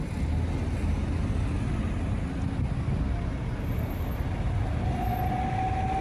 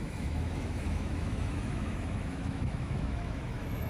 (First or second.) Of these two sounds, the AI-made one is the second